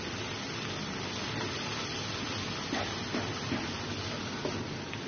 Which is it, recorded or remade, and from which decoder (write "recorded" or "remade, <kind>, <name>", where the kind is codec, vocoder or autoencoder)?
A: recorded